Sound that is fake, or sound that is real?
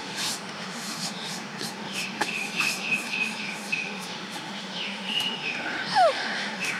fake